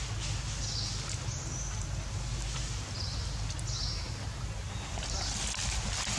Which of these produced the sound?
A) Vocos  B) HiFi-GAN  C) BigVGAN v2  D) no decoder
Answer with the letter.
D